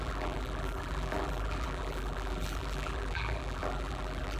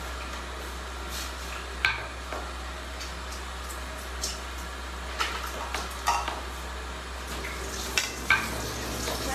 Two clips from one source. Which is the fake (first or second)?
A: first